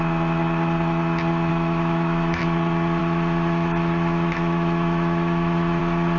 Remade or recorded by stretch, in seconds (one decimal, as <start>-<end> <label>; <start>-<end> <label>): 0.0-1.5 recorded; 1.5-2.4 remade; 2.4-3.0 recorded; 3.0-5.8 remade; 5.8-6.2 recorded